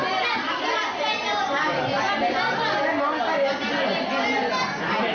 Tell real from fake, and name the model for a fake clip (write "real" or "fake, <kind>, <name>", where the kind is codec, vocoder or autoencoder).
real